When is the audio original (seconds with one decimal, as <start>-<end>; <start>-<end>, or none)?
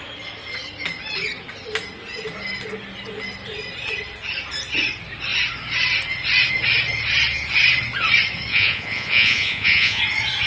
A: 0.0-8.5; 10.0-10.5